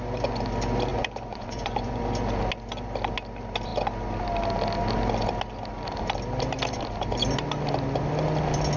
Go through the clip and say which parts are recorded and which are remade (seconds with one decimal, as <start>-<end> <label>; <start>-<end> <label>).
0.0-0.9 recorded; 0.9-2.0 remade; 2.0-8.8 recorded